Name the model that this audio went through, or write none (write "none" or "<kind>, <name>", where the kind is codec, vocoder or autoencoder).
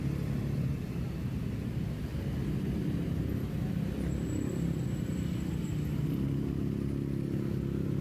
none